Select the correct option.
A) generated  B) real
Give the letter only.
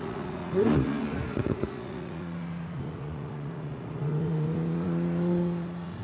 A